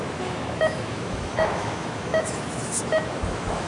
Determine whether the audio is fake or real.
fake